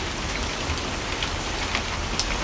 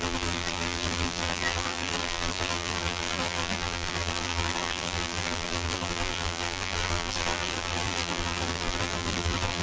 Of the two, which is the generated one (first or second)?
second